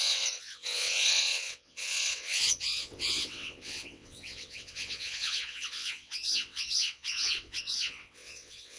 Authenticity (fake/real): fake